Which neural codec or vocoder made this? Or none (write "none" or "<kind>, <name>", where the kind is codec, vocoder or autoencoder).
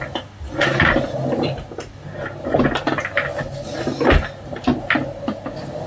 none